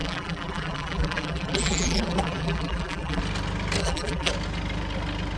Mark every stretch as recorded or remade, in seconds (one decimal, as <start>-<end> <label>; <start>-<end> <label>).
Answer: 0.0-3.2 remade; 3.2-3.8 recorded; 3.8-4.3 remade; 4.3-5.4 recorded